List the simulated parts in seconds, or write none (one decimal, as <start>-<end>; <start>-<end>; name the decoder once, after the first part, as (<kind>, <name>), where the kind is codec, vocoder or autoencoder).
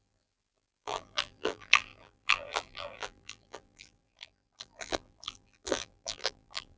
0.0-6.8 (vocoder, BigVGAN v2)